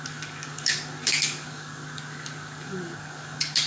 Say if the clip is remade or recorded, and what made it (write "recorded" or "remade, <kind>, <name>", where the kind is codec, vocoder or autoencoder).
remade, codec, DAC